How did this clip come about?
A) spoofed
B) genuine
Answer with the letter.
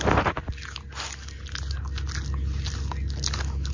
B